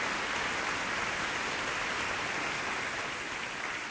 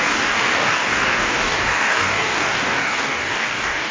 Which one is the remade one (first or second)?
second